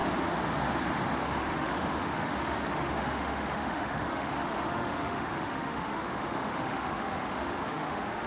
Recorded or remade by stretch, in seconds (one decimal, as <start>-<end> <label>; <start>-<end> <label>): 0.0-1.1 recorded; 1.1-8.3 remade